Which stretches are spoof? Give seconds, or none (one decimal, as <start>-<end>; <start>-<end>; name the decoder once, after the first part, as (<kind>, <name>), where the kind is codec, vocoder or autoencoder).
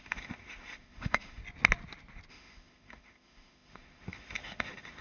0.0-1.4 (autoencoder, DAC-VAE); 2.3-5.0